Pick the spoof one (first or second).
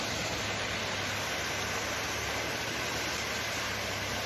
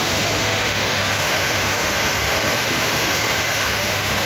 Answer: second